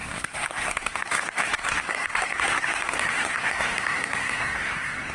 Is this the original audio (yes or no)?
no